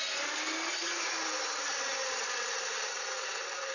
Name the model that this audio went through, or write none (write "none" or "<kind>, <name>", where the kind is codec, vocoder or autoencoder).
none